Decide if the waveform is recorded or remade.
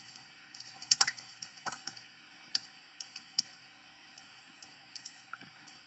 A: remade